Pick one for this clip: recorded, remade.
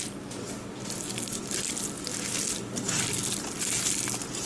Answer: recorded